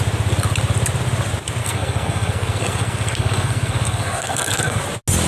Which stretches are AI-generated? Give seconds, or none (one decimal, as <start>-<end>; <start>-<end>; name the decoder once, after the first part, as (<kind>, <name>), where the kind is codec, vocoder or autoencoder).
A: 1.6-4.8 (codec, SNAC)